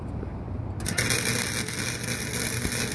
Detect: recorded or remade recorded